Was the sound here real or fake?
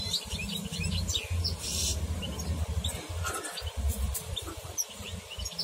real